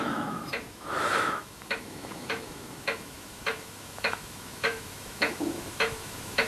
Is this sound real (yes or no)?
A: no